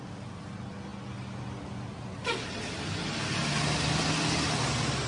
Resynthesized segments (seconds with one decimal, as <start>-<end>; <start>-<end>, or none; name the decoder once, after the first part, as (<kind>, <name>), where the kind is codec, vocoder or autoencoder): none